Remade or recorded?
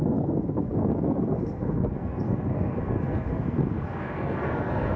remade